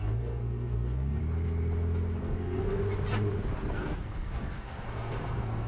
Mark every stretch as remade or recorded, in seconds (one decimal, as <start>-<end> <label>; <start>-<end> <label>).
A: 0.0-1.2 remade; 1.2-2.2 recorded; 2.2-2.8 remade; 2.8-3.7 recorded; 3.7-5.7 remade